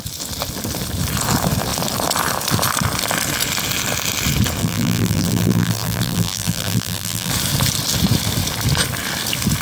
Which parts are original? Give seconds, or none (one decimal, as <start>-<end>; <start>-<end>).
0.0-4.6; 7.3-9.6

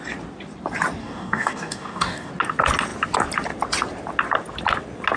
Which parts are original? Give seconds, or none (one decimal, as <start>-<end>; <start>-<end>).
0.0-1.0; 2.3-5.2

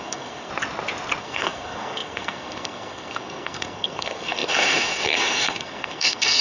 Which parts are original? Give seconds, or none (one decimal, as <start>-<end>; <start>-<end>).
0.5-1.2

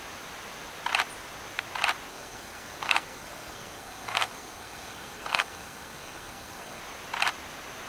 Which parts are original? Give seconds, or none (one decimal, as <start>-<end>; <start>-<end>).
0.0-2.1; 6.8-7.9

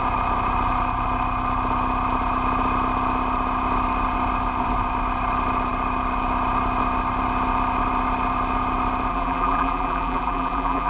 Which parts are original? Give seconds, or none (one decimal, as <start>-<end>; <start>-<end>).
0.0-9.1

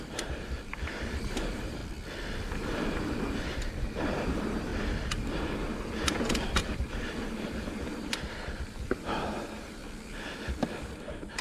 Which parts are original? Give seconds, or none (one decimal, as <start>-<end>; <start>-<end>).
1.8-3.4; 4.7-6.1; 9.8-10.8

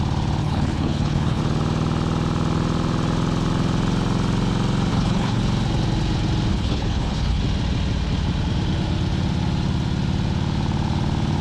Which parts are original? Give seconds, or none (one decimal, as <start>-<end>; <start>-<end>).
0.0-0.4; 1.4-4.9; 5.4-6.5; 7.4-11.4